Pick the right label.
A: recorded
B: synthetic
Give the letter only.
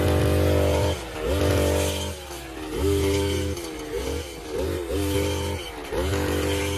A